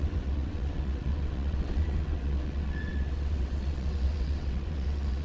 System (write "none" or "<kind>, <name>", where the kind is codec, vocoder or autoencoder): vocoder, WaveNeXt